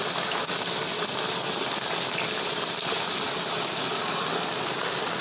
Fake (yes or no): no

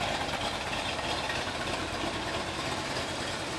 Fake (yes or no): yes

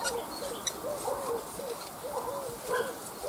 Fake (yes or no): no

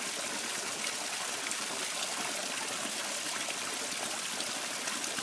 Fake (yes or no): no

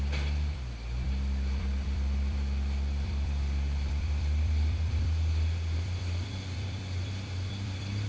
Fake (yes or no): yes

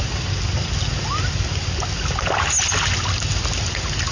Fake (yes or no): no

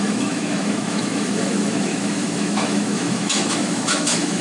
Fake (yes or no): yes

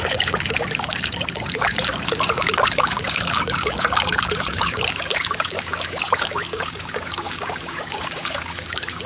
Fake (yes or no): yes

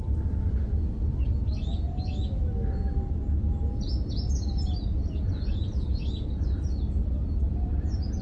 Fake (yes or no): no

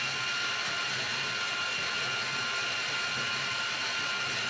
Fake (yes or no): no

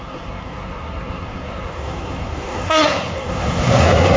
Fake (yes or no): yes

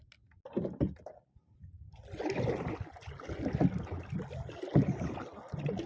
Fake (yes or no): no